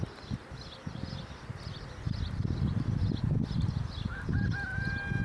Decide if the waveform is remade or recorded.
recorded